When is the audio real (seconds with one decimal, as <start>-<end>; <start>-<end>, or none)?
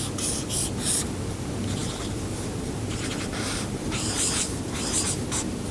0.0-0.6; 1.2-1.8; 5.2-5.7